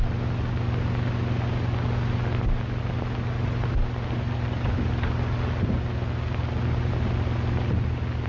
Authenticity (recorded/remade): recorded